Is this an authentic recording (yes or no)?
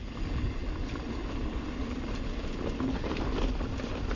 yes